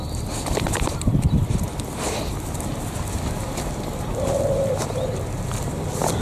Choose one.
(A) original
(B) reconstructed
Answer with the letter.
B